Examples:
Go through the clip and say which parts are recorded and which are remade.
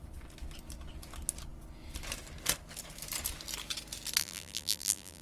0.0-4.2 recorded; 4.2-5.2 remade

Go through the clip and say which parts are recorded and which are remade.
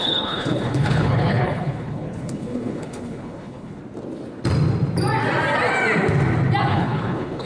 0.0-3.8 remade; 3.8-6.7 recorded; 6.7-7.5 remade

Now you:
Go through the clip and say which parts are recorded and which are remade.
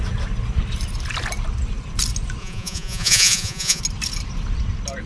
0.0-2.4 recorded; 2.4-3.8 remade; 3.8-5.1 recorded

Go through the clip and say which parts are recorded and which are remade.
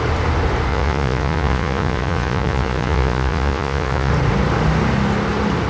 0.0-0.7 recorded; 0.7-4.1 remade; 4.1-5.7 recorded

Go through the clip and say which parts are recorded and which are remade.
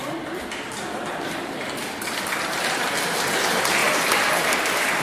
0.0-5.0 recorded